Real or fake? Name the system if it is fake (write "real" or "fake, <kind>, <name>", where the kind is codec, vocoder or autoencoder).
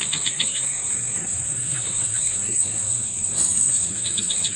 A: fake, codec, SNAC